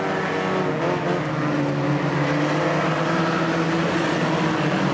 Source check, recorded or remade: recorded